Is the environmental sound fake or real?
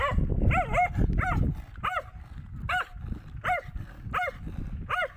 real